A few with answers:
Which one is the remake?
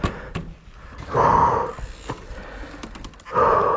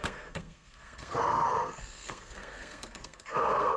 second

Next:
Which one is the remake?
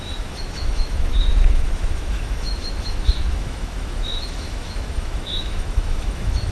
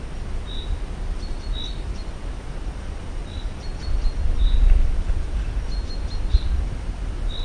first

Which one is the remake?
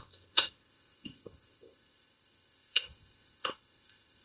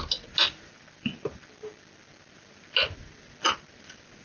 first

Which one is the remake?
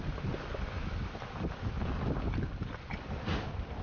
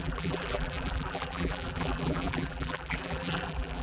second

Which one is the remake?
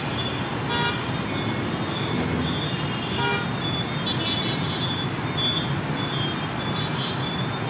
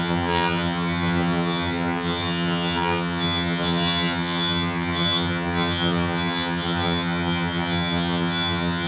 second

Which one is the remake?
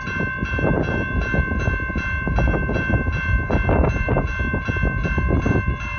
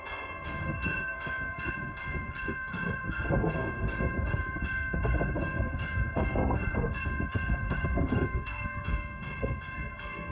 second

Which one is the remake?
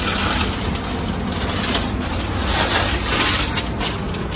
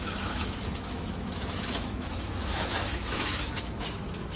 second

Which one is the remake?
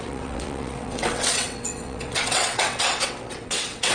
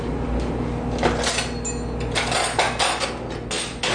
first